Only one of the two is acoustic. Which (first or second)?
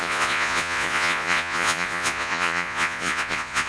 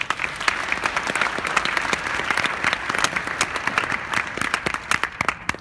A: second